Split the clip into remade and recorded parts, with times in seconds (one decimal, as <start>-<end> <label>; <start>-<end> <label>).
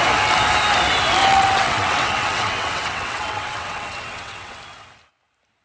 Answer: 0.0-1.2 recorded; 1.2-4.6 remade; 4.6-5.6 recorded